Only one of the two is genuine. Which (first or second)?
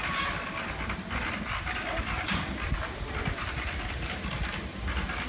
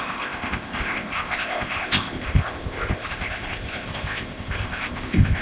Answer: first